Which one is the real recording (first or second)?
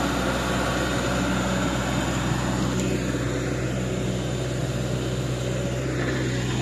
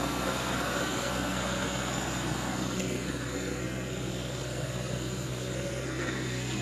first